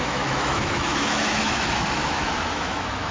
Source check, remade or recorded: remade